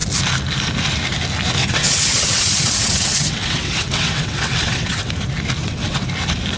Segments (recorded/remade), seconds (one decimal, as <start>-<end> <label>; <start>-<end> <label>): 0.0-1.6 recorded; 1.6-5.1 remade; 5.1-5.6 recorded; 5.6-6.1 remade; 6.1-6.6 recorded